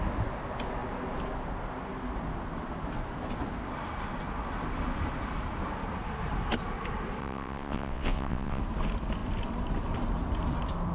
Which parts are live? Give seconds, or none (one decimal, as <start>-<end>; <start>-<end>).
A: 0.0-7.2; 8.6-10.9